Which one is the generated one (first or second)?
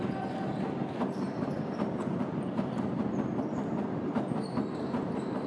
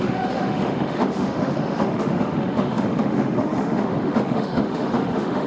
second